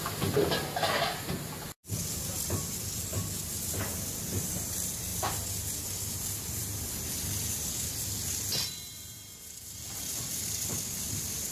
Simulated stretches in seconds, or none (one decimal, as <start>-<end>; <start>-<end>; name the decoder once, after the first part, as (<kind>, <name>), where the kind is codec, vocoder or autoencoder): 0.0-3.1 (vocoder, BigVGAN v2); 4.2-5.1; 6.1-11.5